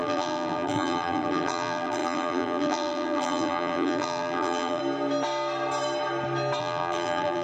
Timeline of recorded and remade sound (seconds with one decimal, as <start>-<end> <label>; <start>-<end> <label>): 0.0-4.8 remade; 4.8-6.6 recorded; 6.6-7.4 remade